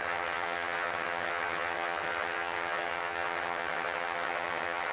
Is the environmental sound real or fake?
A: fake